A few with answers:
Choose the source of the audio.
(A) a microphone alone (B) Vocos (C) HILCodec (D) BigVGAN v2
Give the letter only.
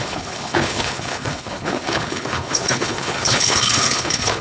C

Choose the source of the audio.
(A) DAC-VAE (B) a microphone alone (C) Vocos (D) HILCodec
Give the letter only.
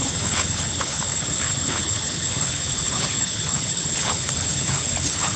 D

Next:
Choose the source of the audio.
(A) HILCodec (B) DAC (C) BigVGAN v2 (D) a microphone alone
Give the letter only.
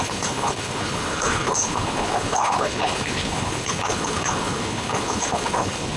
A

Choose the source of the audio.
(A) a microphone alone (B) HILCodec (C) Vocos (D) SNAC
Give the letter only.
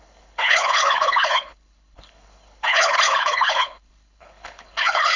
B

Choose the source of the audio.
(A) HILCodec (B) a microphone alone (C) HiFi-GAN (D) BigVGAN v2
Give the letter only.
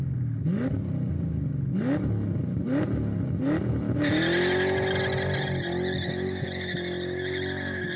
B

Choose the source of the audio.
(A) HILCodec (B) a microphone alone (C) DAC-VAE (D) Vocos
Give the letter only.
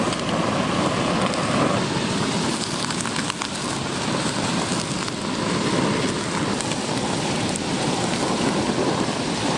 B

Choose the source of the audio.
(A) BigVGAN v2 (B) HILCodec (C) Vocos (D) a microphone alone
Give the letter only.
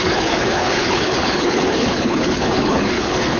B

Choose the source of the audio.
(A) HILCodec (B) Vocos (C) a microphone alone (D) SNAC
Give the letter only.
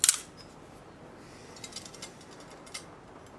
C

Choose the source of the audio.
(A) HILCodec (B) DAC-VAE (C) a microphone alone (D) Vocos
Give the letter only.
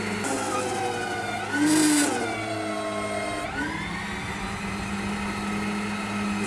C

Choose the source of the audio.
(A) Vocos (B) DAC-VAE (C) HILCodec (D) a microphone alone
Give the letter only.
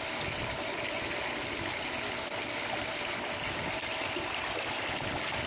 D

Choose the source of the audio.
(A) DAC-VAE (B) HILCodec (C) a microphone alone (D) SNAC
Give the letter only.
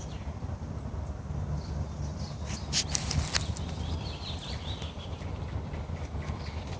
C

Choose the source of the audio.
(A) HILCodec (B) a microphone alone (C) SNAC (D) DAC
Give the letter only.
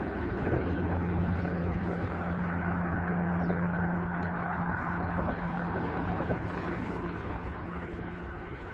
A